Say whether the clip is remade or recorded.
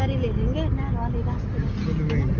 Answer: recorded